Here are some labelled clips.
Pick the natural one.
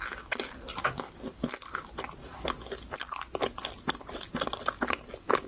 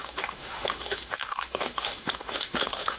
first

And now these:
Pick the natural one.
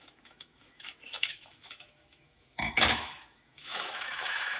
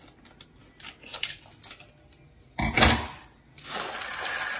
second